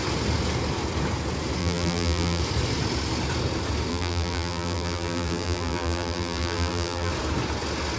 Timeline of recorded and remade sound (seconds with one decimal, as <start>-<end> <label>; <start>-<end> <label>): 0.0-1.6 recorded; 1.6-2.4 remade; 2.4-3.9 recorded; 3.9-7.1 remade; 7.1-8.0 recorded

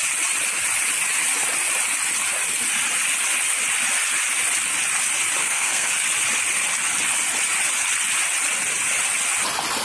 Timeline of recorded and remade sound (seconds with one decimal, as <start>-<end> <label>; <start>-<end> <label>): 0.0-5.4 recorded; 5.4-5.9 remade; 5.9-9.8 recorded

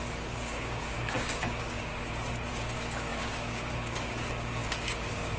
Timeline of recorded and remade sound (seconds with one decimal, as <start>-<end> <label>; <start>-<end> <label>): 0.0-1.9 remade; 1.9-2.5 recorded; 2.5-5.4 remade

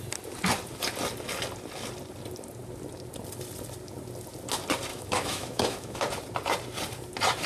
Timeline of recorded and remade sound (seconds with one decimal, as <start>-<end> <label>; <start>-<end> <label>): 0.0-4.9 recorded; 4.9-6.0 remade; 6.0-7.5 recorded

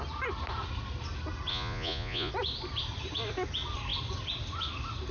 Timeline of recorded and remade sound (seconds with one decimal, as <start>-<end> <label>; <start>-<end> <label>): 0.0-1.5 recorded; 1.5-2.3 remade; 2.3-5.1 recorded

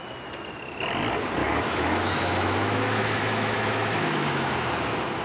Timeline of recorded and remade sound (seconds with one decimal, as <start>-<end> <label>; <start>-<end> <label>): 0.0-1.4 recorded; 1.4-4.5 remade; 4.5-5.2 recorded

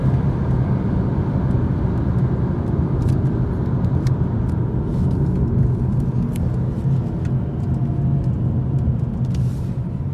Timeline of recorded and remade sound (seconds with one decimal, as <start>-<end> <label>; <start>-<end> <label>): 0.0-10.1 recorded